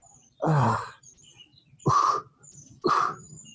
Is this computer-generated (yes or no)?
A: no